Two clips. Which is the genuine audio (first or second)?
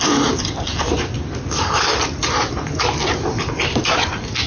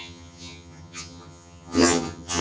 first